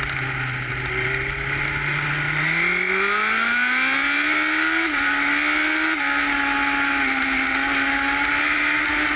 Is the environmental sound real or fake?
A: real